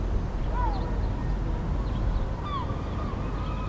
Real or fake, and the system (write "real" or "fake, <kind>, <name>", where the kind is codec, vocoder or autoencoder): real